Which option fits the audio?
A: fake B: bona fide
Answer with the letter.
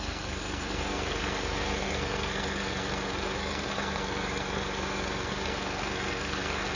A